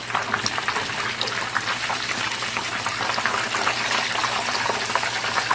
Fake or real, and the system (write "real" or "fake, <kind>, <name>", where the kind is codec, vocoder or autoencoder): real